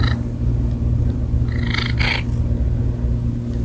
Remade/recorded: recorded